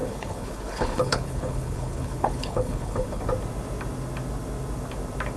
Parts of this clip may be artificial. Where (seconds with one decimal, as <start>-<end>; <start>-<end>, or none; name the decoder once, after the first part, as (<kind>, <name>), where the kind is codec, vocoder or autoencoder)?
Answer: 0.0-3.2 (codec, HILCodec)